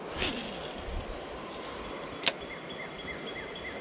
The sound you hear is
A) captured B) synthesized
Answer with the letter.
A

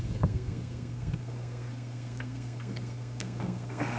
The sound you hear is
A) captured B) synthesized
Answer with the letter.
B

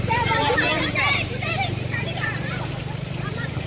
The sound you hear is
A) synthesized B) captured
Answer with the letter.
A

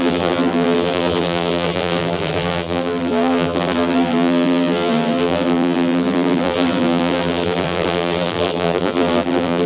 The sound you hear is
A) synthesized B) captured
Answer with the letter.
A